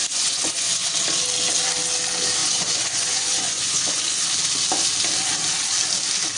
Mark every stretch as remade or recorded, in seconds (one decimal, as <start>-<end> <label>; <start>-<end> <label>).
0.0-0.9 remade; 0.9-2.4 recorded; 2.4-4.0 remade; 4.0-6.4 recorded